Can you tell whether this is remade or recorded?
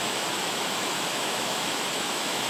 remade